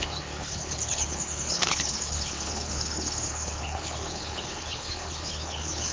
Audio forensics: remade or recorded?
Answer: remade